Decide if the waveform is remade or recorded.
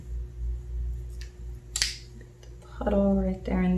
recorded